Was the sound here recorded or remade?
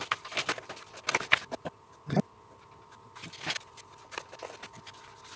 recorded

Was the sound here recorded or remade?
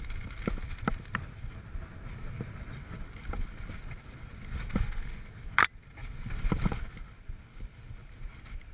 recorded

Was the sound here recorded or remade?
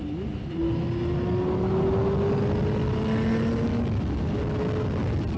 recorded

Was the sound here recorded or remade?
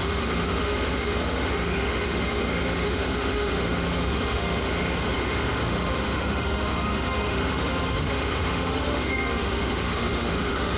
remade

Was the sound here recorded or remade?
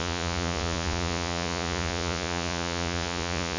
remade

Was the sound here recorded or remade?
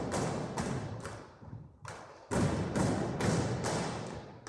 recorded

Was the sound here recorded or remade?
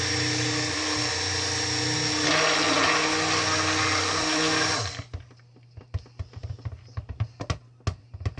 recorded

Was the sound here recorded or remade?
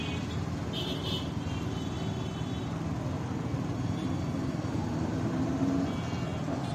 recorded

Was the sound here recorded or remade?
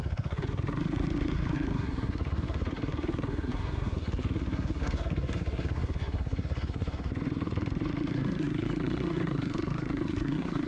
remade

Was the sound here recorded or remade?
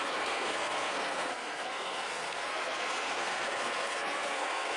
remade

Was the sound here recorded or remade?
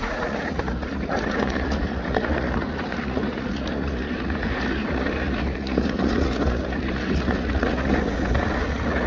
remade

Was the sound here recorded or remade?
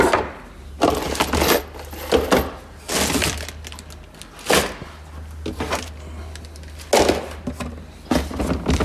recorded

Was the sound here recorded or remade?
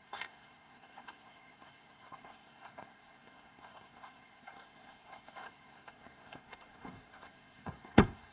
remade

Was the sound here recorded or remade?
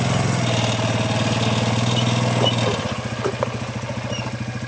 recorded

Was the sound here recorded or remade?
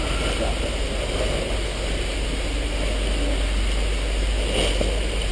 recorded